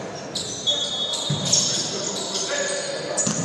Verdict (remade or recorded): recorded